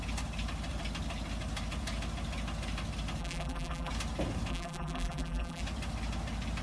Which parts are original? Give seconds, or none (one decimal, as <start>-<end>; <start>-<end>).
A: 0.0-3.2; 3.9-4.5; 5.6-6.6